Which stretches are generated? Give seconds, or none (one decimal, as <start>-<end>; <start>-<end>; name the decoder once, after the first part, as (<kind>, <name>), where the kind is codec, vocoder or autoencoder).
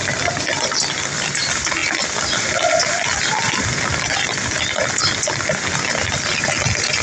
none